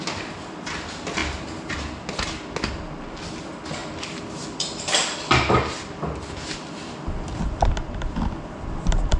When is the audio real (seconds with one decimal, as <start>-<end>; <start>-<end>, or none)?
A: 0.0-3.8; 5.5-9.2